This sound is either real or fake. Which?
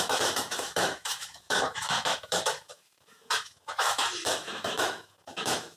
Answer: fake